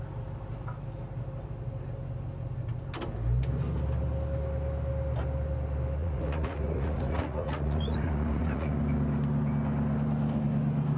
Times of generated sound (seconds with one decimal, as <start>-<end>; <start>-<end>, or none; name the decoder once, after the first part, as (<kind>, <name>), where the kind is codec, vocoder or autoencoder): 6.0-8.8 (vocoder, Vocos)